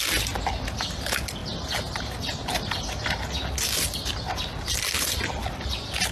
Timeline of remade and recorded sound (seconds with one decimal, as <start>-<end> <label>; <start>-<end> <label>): 0.0-6.1 recorded